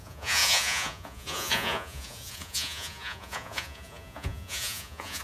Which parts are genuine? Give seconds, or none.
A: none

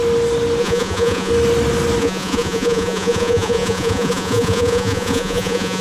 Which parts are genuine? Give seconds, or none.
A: 0.0-0.6; 1.3-2.0

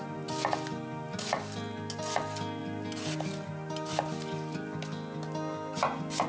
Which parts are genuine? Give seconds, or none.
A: 0.0-6.3

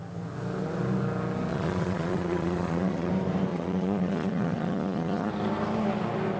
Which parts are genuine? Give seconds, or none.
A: 0.0-1.5; 3.1-3.5; 5.3-6.4

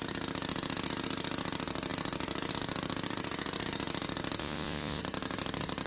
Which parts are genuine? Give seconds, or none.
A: 0.0-4.4; 5.0-5.9

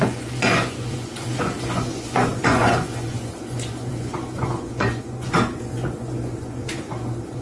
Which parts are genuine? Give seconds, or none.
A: none